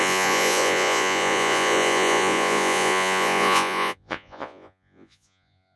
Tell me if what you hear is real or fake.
fake